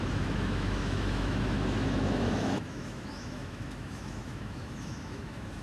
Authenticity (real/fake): fake